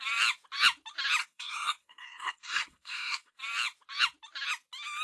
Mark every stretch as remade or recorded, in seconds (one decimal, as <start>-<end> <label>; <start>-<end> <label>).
0.0-1.2 recorded; 1.2-3.4 remade; 3.4-5.0 recorded